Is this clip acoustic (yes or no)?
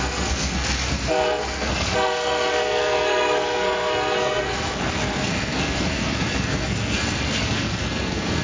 no